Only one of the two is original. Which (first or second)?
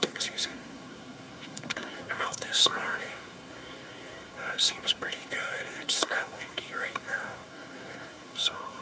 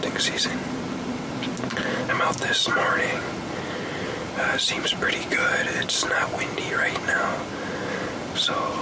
second